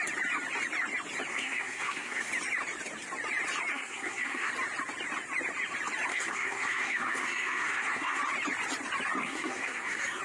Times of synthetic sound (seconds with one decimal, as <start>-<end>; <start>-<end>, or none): 1.3-2.3; 3.7-4.5; 6.1-8.2; 9.2-10.2